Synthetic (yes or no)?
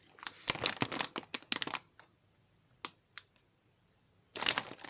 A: no